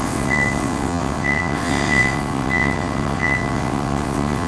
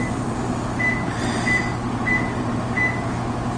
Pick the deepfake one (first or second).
first